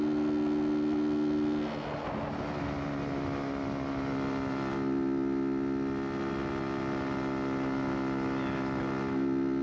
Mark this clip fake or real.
real